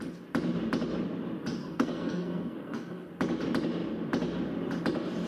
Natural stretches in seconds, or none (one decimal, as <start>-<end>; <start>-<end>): 0.0-1.6; 3.1-5.3